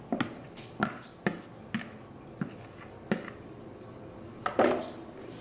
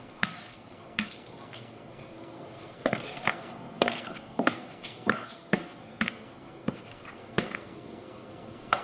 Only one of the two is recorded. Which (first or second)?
first